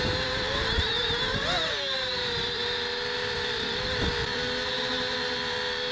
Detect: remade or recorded remade